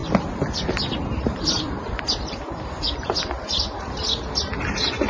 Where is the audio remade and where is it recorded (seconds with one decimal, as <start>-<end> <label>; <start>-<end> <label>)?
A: 0.0-0.7 recorded; 0.7-5.1 remade